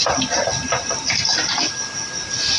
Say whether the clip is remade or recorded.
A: recorded